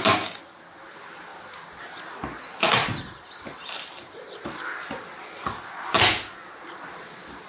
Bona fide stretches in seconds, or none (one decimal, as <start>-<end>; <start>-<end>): 0.0-2.8; 4.6-7.5